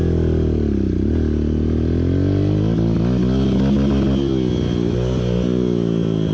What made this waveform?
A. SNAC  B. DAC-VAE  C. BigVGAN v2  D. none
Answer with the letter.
D